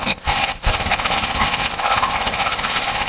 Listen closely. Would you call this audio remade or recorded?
remade